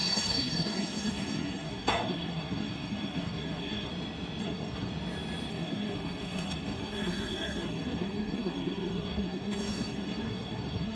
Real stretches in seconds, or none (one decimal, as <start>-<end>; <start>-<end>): 3.9-4.4; 4.9-5.5

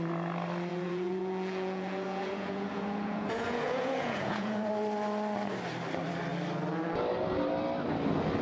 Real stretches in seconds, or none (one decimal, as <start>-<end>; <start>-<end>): 0.0-0.7; 4.7-8.4